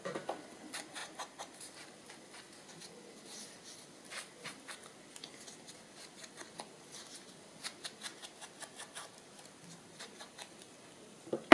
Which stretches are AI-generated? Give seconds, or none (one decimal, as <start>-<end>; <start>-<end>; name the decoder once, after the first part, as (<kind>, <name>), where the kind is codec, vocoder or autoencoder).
1.0-1.7 (vocoder, BigVGAN v2); 8.1-10.4